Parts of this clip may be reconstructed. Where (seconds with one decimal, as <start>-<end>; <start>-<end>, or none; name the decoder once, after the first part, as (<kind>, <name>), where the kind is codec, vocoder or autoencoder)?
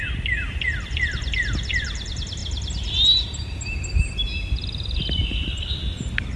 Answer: none